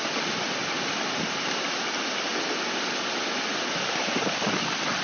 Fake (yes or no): no